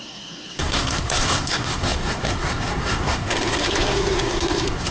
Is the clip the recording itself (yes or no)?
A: no